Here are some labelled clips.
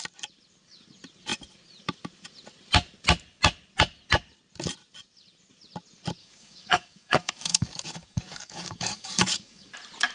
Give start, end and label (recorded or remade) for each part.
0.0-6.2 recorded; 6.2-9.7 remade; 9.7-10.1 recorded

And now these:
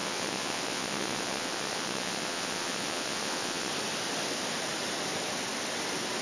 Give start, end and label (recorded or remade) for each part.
0.0-3.7 remade; 3.7-6.2 recorded

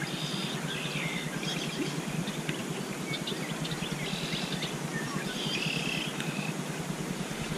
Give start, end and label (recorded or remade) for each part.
0.0-2.6 recorded; 2.6-3.5 remade; 3.5-4.9 recorded; 4.9-5.5 remade; 5.5-6.1 recorded; 6.1-7.6 remade

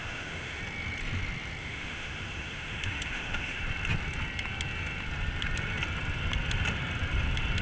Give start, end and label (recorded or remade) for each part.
0.0-0.6 remade; 0.6-1.6 recorded; 1.6-3.6 remade; 3.6-7.6 recorded

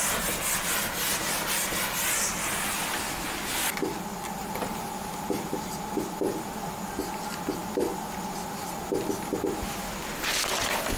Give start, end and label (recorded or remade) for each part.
0.0-4.4 recorded; 4.4-5.6 remade; 5.6-11.0 recorded